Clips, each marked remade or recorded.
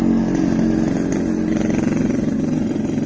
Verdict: recorded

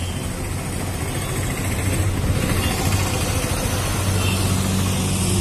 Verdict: recorded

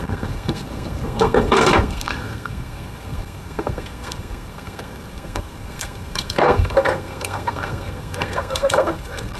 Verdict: remade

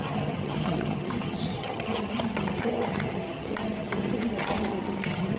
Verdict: remade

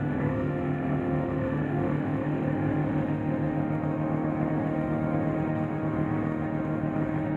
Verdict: remade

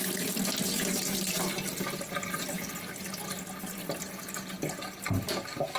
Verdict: recorded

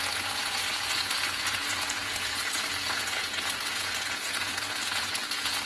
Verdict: remade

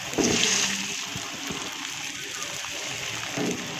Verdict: remade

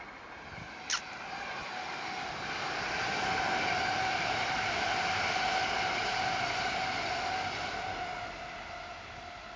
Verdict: recorded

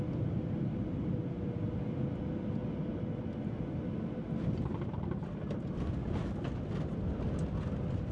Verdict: recorded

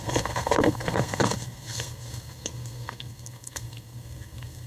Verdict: remade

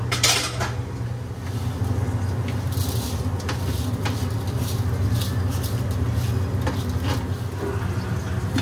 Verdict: recorded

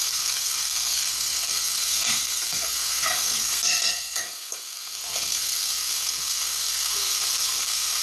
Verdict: remade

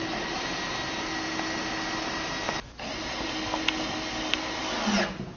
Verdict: recorded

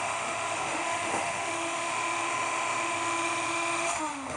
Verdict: remade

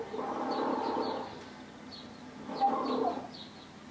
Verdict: recorded